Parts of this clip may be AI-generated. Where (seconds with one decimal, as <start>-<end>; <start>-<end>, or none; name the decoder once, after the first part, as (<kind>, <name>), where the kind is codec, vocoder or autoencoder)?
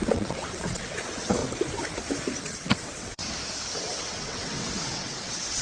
0.0-1.4 (vocoder, WaveNeXt); 2.4-3.2; 3.8-5.6